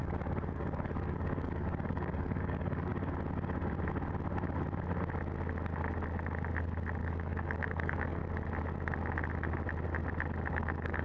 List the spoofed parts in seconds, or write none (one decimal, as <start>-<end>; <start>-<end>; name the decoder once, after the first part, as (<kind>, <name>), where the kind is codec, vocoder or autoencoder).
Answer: 0.0-2.9 (codec, DAC); 7.0-8.2; 10.5-11.0